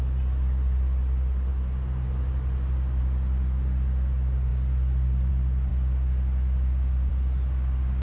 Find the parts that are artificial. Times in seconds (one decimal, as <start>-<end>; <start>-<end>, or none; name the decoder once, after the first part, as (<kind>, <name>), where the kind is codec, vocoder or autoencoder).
none